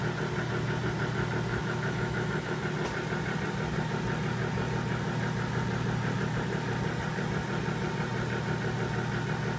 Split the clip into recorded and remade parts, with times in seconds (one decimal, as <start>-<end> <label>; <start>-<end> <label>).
0.0-1.5 recorded; 1.5-2.6 remade; 2.6-9.6 recorded